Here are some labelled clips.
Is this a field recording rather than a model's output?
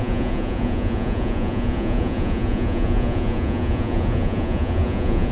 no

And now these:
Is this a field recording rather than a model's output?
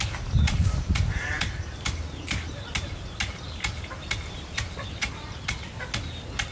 yes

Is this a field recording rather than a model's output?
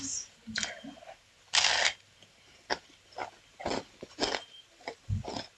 yes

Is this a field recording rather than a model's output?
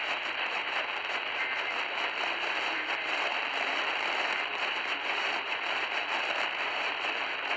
no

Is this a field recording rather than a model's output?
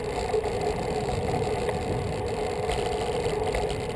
yes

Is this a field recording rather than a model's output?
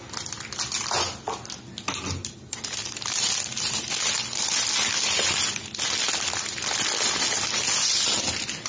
yes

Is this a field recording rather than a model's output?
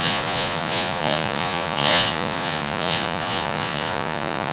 no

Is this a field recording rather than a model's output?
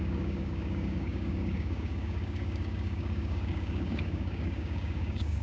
no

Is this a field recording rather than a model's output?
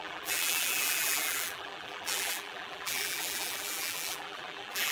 no